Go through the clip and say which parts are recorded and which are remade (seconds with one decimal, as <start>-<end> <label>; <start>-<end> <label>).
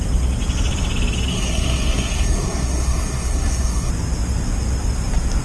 0.0-1.3 recorded; 1.3-3.9 remade; 3.9-5.4 recorded